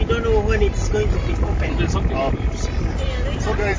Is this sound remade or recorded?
recorded